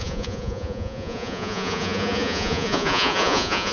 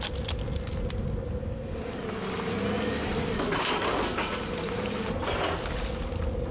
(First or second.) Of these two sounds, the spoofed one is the first